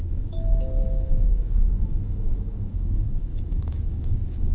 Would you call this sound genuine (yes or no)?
no